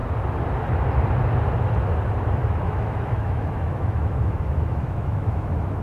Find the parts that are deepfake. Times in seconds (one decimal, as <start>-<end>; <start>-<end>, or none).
2.4-5.8